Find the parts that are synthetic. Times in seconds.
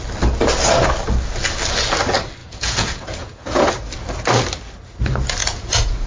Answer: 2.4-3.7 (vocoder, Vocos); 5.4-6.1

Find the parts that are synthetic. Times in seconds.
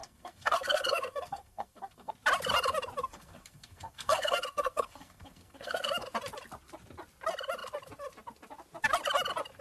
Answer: 0.0-2.1 (codec, SNAC); 3.0-5.9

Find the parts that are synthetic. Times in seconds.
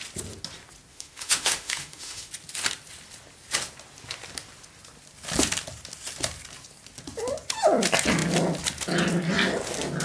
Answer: 0.9-2.3 (autoencoder, DAC-VAE)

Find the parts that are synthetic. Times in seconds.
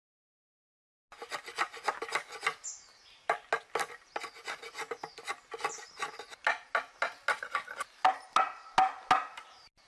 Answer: none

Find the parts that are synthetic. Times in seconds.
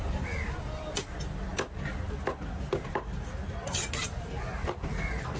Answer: none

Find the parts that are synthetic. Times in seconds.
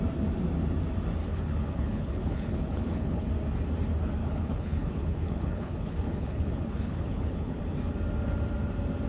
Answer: 1.2-3.3 (codec, HILCodec); 4.2-7.6